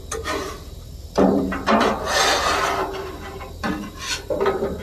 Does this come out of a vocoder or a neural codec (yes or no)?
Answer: yes